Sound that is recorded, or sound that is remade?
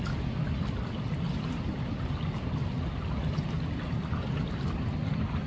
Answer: recorded